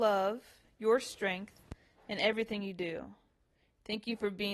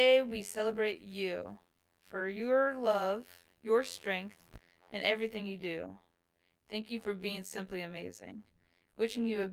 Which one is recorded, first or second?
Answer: first